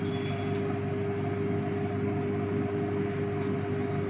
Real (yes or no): yes